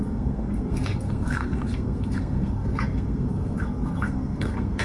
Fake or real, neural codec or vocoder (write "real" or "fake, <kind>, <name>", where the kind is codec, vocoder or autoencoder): fake, codec, SNAC